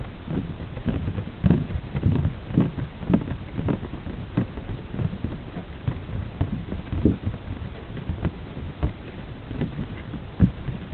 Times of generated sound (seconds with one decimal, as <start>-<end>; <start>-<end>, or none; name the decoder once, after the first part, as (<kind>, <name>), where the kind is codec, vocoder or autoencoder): 0.8-1.7 (vocoder, Vocos)